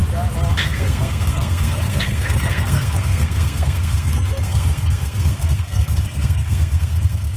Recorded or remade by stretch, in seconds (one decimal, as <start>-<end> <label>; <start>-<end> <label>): 0.0-0.5 recorded; 0.5-7.4 remade